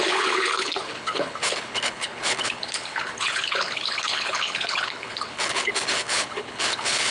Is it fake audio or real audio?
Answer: fake